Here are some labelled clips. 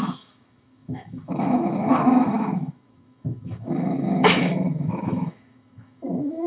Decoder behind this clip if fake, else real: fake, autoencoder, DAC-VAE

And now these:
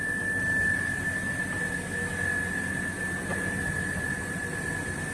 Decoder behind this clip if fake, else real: real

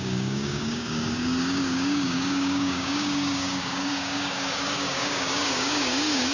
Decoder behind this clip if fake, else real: fake, codec, DAC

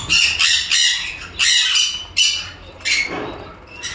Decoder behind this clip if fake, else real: real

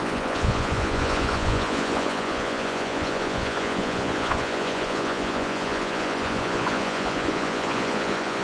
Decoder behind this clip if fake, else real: fake, vocoder, Vocos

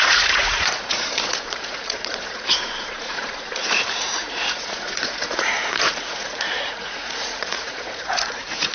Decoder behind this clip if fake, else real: fake, vocoder, Vocos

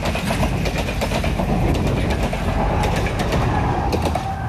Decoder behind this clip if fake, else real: real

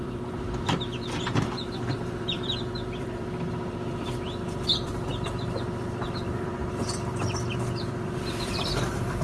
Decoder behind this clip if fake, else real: fake, vocoder, BigVGAN v2